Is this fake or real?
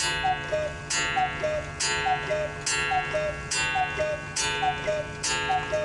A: real